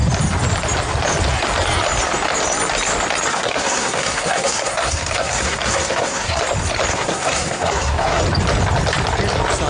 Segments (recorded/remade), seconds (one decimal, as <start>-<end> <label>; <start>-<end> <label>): 0.0-3.3 recorded; 3.3-6.4 remade; 6.4-6.9 recorded; 6.9-8.2 remade; 8.2-9.7 recorded